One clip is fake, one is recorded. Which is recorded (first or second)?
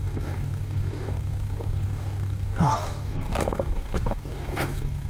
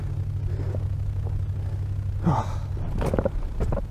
second